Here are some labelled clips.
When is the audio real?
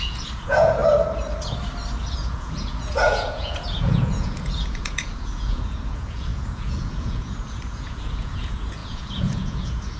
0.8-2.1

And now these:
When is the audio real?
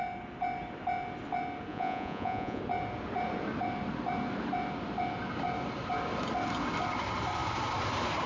0.0-1.7; 2.6-8.3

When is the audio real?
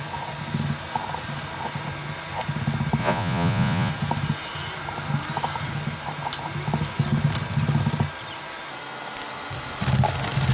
0.0-3.0; 3.9-10.5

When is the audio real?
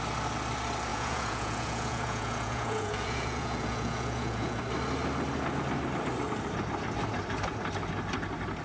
0.0-0.9; 4.6-8.6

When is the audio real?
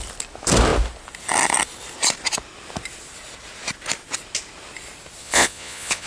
0.0-5.2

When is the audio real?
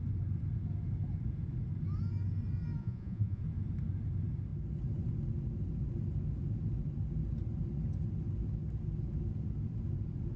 0.0-2.8; 3.4-10.4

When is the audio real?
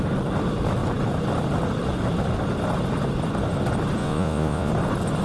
0.0-4.0; 4.7-5.2